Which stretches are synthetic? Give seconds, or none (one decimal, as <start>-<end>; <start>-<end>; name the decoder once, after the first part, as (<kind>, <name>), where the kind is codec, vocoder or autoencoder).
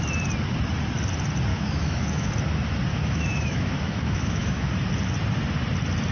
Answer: 1.5-2.3 (autoencoder, DAC-VAE); 2.9-4.7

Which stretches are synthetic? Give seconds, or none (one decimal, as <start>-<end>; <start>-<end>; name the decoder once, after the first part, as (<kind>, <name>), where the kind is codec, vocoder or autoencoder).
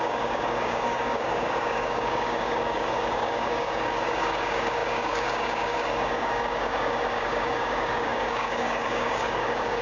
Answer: 0.0-9.8 (codec, DAC)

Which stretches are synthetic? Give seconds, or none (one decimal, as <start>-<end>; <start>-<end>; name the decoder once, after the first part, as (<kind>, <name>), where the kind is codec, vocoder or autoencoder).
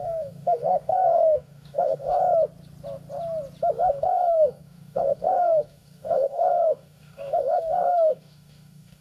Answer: 0.0-2.2 (codec, DAC); 3.8-9.0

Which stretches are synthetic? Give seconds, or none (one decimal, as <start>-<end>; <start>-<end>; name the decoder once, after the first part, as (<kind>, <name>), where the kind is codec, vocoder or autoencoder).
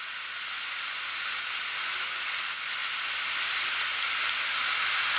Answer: none